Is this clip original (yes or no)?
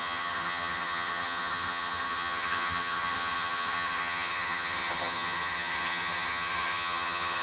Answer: no